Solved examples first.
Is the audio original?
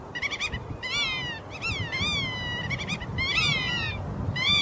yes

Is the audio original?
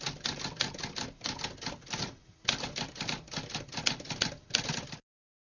yes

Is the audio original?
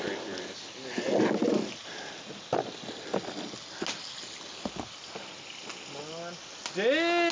yes